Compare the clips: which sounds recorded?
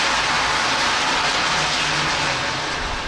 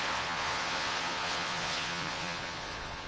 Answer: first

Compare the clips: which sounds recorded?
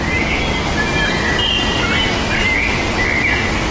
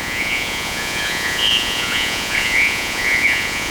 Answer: first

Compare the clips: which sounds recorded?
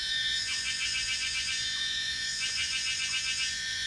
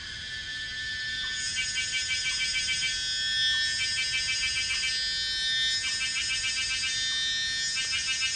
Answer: second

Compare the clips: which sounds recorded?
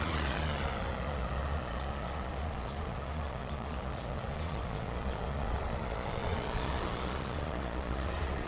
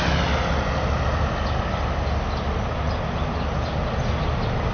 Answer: second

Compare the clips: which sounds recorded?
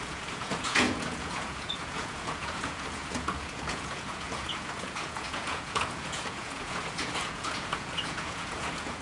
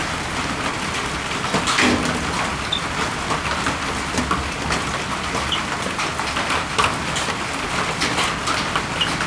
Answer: second